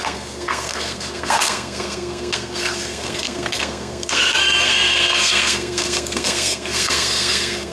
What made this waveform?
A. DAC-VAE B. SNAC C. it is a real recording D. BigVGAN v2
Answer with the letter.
B